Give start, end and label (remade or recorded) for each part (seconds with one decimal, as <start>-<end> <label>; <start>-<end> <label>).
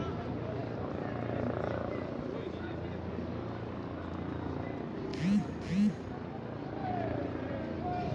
0.0-8.1 recorded